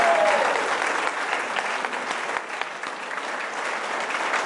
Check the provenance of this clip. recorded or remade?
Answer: recorded